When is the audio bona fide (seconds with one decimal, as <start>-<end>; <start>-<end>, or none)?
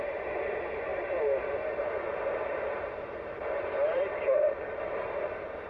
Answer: 0.9-2.4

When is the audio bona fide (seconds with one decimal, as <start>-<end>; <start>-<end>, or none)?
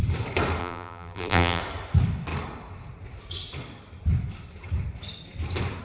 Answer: 0.0-0.6; 1.6-5.8